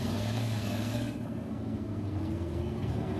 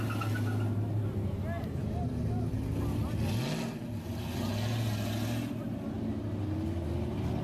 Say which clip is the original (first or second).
second